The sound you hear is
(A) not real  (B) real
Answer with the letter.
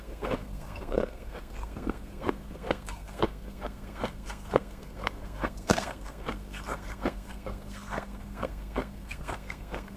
A